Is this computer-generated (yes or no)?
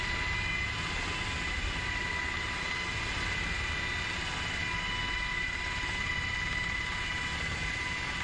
no